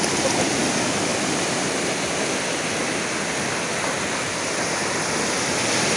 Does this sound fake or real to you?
real